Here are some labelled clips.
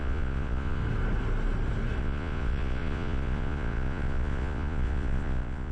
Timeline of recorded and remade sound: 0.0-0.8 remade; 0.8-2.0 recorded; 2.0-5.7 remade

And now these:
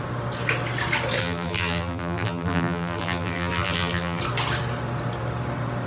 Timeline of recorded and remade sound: 0.0-1.2 recorded; 1.2-4.2 remade; 4.2-5.9 recorded

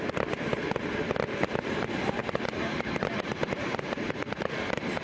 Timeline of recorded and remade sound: 0.0-0.5 remade; 0.5-1.5 recorded; 1.5-5.0 remade

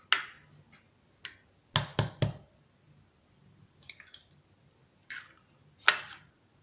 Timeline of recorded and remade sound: 0.0-6.6 recorded

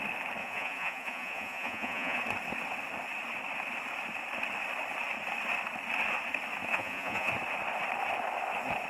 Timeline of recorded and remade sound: 0.0-0.4 recorded; 0.4-2.2 remade; 2.2-6.7 recorded; 6.7-7.3 remade; 7.3-8.9 recorded

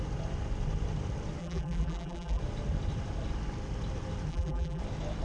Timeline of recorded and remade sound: 0.0-1.4 recorded; 1.4-2.4 remade; 2.4-4.3 recorded; 4.3-4.8 remade; 4.8-5.2 recorded